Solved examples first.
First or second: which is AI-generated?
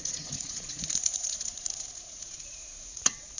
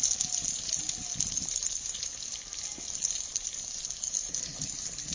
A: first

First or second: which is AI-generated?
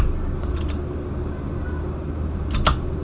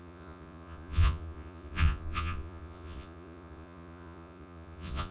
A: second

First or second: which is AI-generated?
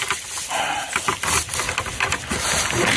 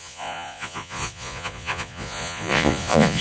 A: second